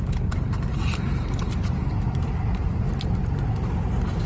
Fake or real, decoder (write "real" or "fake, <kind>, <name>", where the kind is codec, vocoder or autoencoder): fake, vocoder, BigVGAN v2